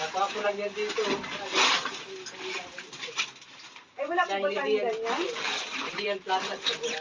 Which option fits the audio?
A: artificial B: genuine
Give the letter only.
B